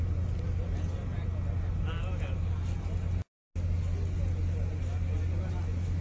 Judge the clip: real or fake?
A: real